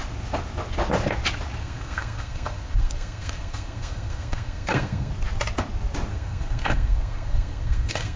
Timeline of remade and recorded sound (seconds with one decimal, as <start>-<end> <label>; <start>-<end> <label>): 0.0-1.6 recorded; 1.6-5.1 remade; 5.1-6.1 recorded; 6.1-8.2 remade